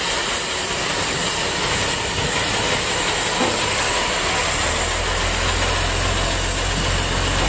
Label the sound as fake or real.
real